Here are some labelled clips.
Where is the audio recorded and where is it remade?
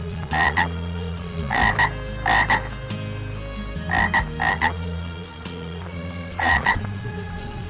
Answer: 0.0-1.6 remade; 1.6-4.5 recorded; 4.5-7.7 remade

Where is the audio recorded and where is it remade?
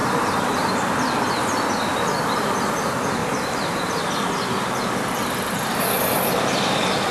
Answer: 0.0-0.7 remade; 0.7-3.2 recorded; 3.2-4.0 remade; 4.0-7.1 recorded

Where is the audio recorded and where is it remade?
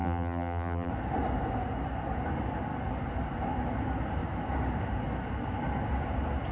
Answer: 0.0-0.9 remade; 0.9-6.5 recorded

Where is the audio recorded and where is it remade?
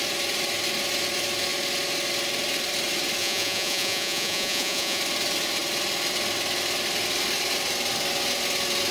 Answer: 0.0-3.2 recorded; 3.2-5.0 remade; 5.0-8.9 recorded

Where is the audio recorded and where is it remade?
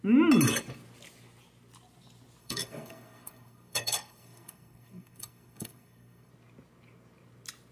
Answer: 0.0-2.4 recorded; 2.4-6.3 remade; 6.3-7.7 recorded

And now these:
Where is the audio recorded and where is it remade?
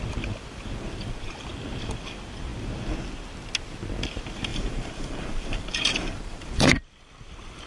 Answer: 0.0-4.5 recorded; 4.5-6.6 remade; 6.6-7.7 recorded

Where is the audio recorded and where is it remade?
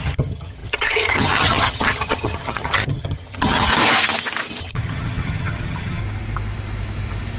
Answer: 0.0-3.7 remade; 3.7-4.6 recorded; 4.6-6.0 remade; 6.0-7.4 recorded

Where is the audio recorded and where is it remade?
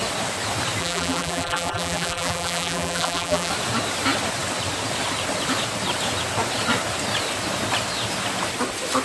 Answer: 0.0-0.8 recorded; 0.8-3.5 remade; 3.5-9.0 recorded